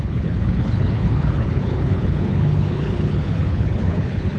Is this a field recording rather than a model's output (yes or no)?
no